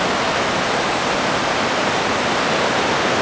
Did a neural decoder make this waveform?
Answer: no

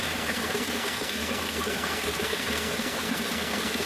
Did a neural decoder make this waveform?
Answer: yes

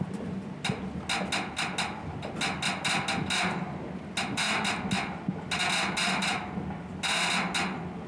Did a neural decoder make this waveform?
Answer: no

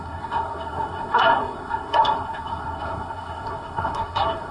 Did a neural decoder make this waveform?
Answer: yes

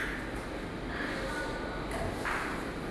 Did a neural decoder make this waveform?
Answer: no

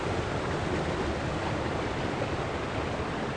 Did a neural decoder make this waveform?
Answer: no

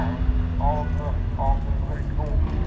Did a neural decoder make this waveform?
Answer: no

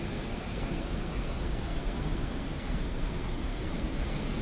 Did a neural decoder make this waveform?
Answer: yes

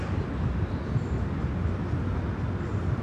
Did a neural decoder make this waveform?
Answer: no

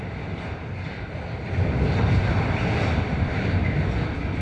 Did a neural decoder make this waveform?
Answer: no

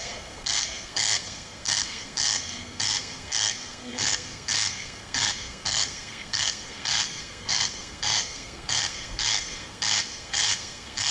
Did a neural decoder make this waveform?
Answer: yes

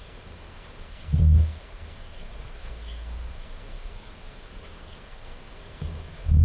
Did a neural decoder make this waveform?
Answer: yes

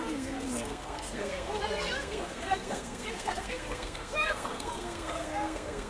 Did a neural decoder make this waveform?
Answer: yes